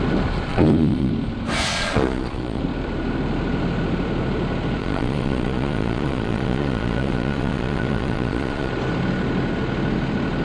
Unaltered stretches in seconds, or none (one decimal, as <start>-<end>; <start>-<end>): 0.0-0.5; 1.1-1.7; 2.6-4.8; 8.7-10.4